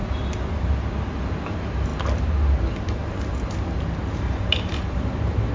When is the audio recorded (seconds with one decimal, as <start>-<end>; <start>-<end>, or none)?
0.0-1.5; 1.9-2.6; 3.0-4.0